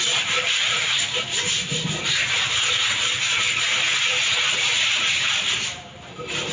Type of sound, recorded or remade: remade